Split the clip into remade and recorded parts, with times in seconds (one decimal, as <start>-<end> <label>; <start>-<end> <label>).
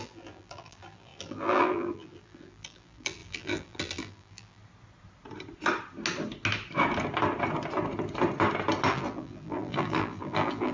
0.0-4.6 remade; 4.6-8.9 recorded; 8.9-10.7 remade